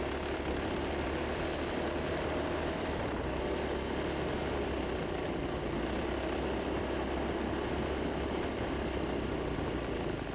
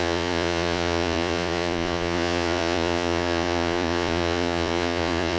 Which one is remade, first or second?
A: second